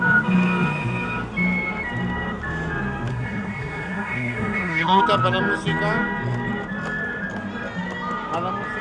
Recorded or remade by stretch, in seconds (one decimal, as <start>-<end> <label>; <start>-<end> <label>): 0.0-3.1 recorded; 3.1-5.0 remade; 5.0-8.8 recorded